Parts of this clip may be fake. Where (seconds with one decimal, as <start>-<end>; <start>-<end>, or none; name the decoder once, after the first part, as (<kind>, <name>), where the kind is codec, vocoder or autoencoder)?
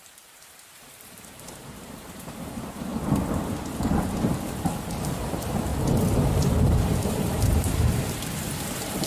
0.0-2.9 (vocoder, BigVGAN v2); 3.8-5.7; 6.7-9.1